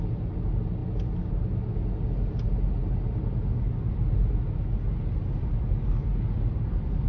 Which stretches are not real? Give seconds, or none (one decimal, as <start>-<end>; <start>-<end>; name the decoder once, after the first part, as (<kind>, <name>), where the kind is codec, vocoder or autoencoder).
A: none